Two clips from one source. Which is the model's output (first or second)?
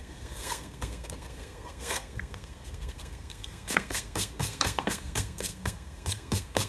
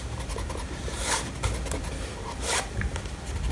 first